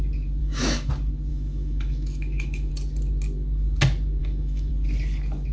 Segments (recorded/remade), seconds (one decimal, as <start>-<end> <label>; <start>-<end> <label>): 0.0-0.4 recorded; 0.4-0.9 remade; 0.9-1.3 recorded; 1.3-2.7 remade; 2.7-4.2 recorded; 4.2-4.7 remade; 4.7-5.5 recorded